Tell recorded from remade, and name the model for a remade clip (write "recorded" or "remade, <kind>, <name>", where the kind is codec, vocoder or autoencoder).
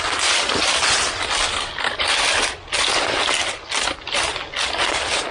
recorded